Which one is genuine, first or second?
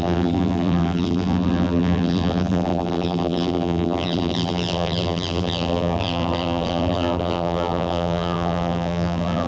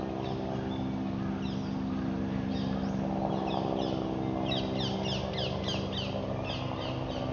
second